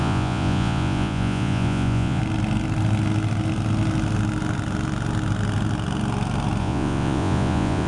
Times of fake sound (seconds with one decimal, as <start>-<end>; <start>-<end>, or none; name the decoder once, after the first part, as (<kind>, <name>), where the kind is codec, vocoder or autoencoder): 0.0-2.2 (vocoder, Vocos); 6.6-7.9